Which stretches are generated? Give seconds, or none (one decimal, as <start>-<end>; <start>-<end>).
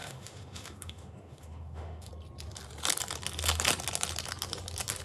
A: 0.0-2.1